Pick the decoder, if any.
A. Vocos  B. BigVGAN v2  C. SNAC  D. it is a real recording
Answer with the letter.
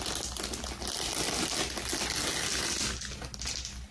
D